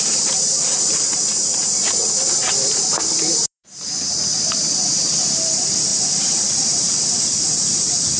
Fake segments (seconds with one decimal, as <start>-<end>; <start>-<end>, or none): 0.0-8.2